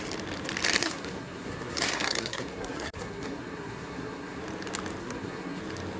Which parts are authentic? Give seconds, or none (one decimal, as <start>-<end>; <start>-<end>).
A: 0.0-0.8; 4.4-5.0; 5.6-6.0